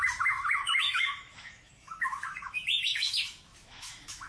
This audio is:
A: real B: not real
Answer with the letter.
B